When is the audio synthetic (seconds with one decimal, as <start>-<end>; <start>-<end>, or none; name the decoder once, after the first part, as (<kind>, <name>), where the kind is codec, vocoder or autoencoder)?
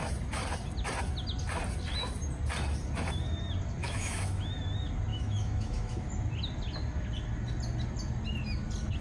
3.8-4.6 (autoencoder, DAC-VAE); 5.1-6.1